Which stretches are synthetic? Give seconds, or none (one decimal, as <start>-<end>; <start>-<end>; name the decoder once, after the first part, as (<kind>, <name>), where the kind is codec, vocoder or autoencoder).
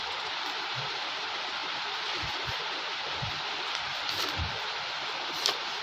none